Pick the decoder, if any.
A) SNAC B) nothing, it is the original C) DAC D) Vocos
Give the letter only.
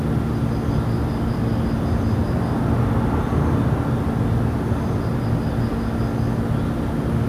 B